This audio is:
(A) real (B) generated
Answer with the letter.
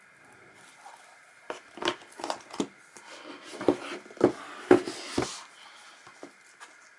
A